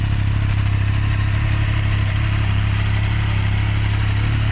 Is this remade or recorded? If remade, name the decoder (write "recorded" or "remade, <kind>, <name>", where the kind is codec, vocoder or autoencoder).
remade, vocoder, BigVGAN v2